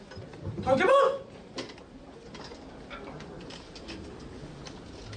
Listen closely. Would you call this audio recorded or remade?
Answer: recorded